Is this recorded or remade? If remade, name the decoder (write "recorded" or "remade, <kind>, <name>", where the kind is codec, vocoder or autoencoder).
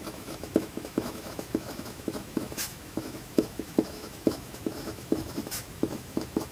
remade, autoencoder, DAC-VAE